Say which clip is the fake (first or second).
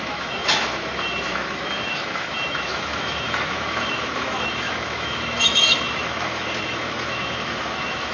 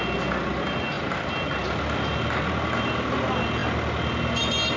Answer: first